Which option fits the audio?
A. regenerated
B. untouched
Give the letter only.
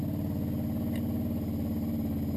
B